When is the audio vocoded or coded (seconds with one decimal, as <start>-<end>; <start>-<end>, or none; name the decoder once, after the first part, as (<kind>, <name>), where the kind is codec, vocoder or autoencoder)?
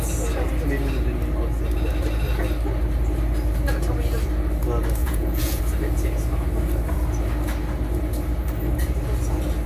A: 5.0-5.6 (vocoder, Vocos)